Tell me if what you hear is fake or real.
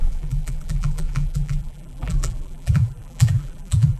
fake